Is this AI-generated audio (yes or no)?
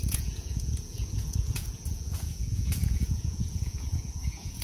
yes